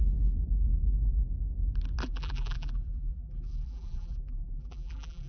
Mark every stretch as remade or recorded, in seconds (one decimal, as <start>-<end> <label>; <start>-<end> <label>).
0.0-2.0 recorded; 2.0-5.3 remade